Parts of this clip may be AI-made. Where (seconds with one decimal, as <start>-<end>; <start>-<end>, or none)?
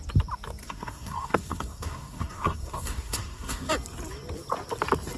0.6-3.7